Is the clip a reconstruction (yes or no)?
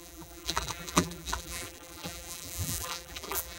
yes